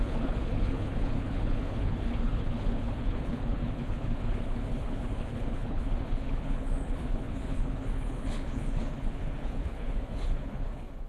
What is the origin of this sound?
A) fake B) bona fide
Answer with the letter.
A